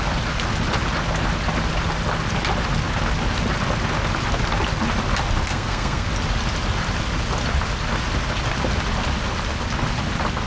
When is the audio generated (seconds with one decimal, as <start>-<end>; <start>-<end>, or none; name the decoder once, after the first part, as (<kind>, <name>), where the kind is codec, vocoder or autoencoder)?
5.5-6.1 (codec, SNAC)